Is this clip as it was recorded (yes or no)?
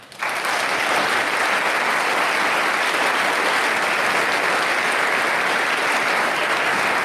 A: yes